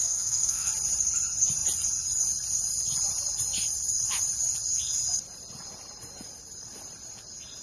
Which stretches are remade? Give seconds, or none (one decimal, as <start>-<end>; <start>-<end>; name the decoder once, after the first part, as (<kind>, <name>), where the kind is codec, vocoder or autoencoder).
0.0-0.7 (codec, SNAC)